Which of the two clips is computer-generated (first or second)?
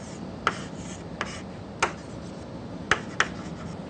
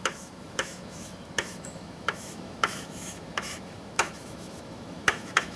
second